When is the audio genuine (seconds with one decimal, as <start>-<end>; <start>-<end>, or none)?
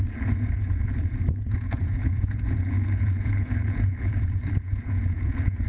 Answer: none